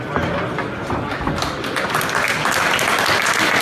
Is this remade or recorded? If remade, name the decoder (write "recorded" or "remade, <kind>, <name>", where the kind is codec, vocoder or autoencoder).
recorded